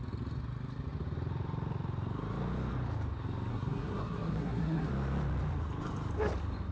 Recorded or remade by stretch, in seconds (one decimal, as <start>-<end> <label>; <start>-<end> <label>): 0.0-3.5 recorded; 3.5-4.9 remade; 4.9-6.7 recorded